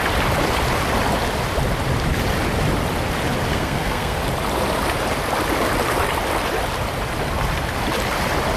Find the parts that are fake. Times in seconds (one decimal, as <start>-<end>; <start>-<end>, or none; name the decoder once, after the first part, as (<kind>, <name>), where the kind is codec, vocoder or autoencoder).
3.5-4.2 (codec, SNAC)